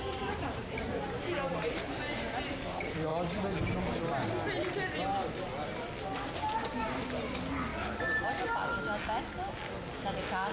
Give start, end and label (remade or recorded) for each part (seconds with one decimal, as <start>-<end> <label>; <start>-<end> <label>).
0.0-10.5 recorded